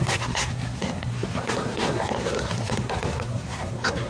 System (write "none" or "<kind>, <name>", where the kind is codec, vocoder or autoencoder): codec, SNAC